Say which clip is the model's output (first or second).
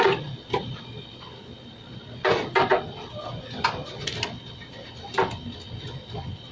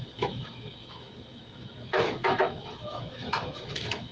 second